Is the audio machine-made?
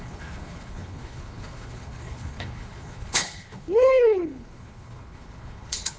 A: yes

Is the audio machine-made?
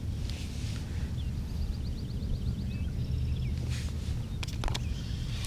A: no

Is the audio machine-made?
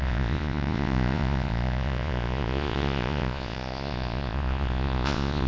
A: yes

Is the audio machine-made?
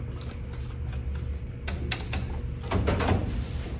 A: no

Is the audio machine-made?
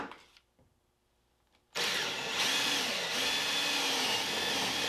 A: no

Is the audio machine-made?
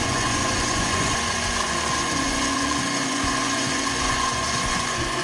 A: yes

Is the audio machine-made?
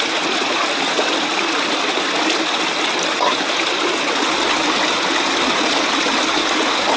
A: no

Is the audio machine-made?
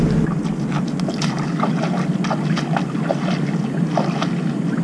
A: no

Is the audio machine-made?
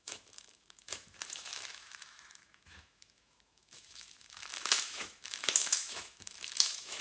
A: yes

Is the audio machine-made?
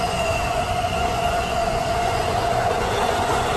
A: yes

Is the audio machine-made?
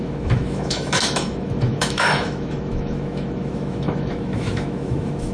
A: yes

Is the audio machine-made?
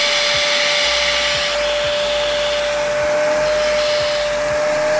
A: no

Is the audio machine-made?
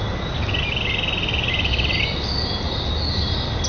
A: no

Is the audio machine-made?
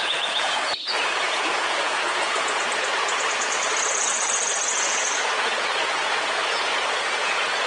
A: yes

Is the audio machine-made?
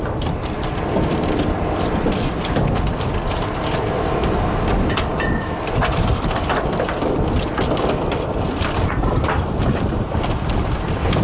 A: no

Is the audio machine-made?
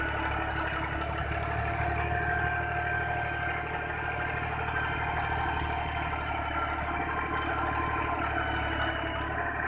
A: no